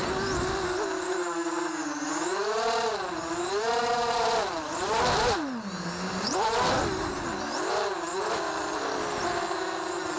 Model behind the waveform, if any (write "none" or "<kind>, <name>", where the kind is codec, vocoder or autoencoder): none